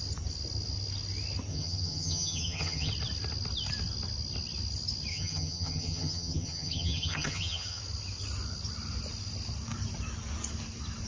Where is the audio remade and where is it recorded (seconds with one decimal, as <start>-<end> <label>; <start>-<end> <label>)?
0.0-1.5 recorded; 1.5-2.9 remade; 2.9-5.1 recorded; 5.1-7.8 remade; 7.8-11.1 recorded